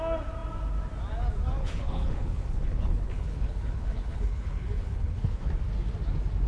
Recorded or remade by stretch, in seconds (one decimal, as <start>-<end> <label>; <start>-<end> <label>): 0.0-1.6 recorded; 1.6-5.5 remade; 5.5-6.5 recorded